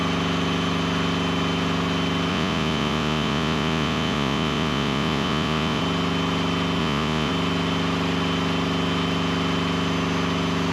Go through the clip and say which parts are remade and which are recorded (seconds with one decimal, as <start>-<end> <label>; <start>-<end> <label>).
0.0-2.3 recorded; 2.3-5.8 remade; 5.8-6.8 recorded; 6.8-7.3 remade; 7.3-10.7 recorded